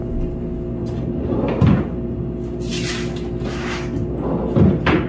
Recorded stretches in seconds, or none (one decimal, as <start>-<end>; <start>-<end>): 0.0-0.8; 1.7-5.1